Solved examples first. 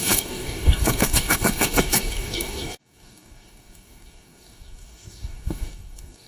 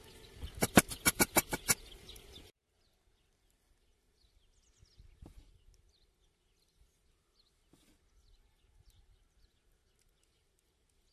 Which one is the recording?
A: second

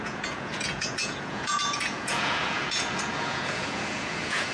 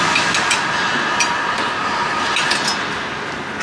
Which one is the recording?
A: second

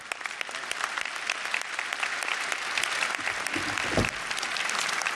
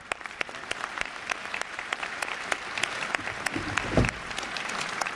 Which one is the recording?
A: first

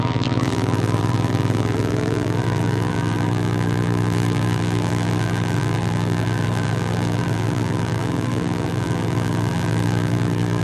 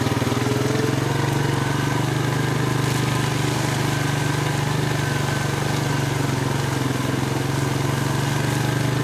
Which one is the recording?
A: second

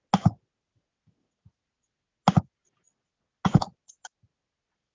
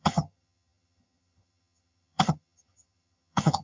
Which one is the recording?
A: first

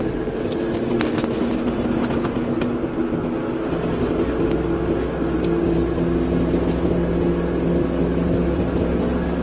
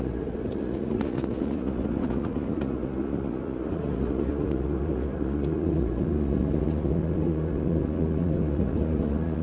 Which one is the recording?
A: first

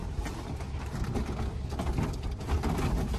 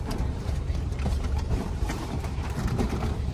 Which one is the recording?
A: first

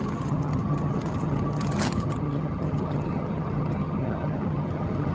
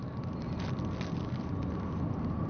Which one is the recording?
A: second